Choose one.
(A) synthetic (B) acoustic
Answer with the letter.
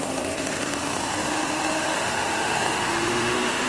A